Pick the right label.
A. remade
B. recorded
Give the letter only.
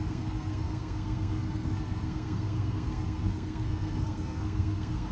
A